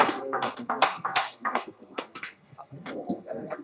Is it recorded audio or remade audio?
remade